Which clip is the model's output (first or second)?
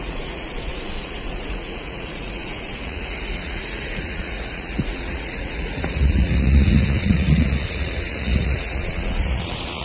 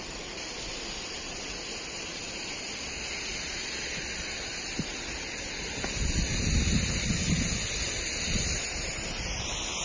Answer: first